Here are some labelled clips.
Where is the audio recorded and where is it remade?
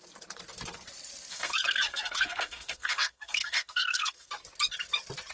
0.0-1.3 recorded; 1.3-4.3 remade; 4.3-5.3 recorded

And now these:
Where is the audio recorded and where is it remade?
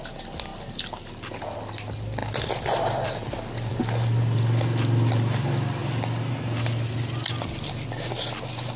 0.0-2.2 recorded; 2.2-3.8 remade; 3.8-8.8 recorded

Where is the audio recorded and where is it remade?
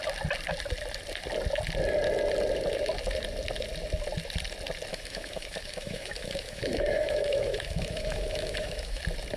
0.0-4.9 recorded; 4.9-9.0 remade; 9.0-9.4 recorded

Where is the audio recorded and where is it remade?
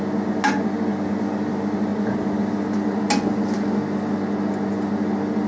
0.0-5.5 recorded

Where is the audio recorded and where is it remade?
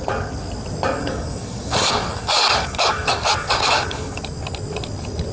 0.0-1.0 recorded; 1.0-4.2 remade; 4.2-5.3 recorded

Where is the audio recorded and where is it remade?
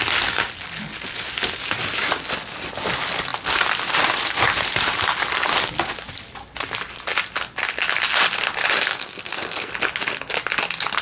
0.0-8.9 recorded; 8.9-9.7 remade; 9.7-11.0 recorded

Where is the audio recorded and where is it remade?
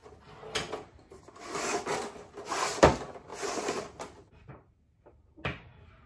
0.0-6.1 recorded